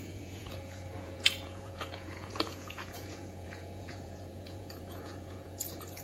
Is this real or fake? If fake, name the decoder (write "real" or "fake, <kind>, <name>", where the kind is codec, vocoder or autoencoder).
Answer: fake, vocoder, Vocos